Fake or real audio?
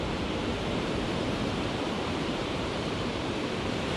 fake